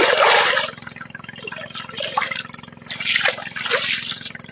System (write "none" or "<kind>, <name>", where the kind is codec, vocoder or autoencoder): none